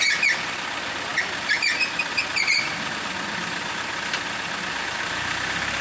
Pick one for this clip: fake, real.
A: real